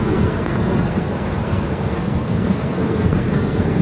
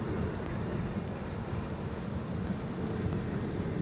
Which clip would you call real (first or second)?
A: second